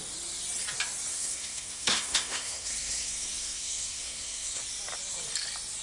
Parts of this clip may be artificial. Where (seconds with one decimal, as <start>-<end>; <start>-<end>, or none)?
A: 1.1-4.6